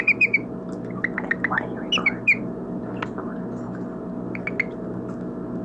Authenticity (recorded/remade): recorded